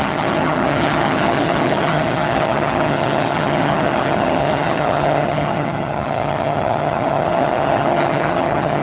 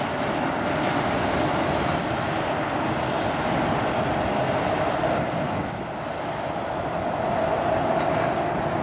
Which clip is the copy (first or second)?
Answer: first